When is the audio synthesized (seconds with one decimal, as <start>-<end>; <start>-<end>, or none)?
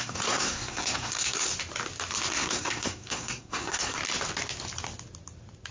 0.0-1.5; 2.3-4.0